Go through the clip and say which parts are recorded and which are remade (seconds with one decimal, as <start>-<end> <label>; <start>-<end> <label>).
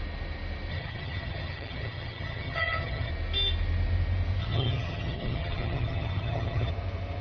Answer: 0.0-0.7 recorded; 0.7-3.1 remade; 3.1-4.4 recorded; 4.4-6.7 remade; 6.7-7.2 recorded